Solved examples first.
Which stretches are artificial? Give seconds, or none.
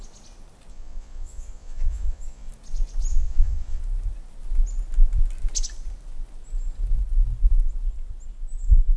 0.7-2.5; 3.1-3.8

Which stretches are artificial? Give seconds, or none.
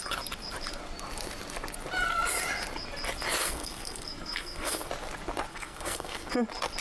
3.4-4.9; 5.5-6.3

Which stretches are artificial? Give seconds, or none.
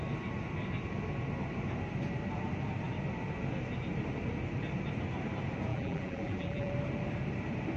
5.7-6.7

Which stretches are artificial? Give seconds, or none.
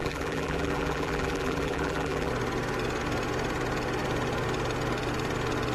0.0-2.3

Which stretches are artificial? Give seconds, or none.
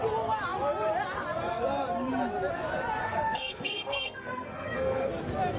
3.0-5.1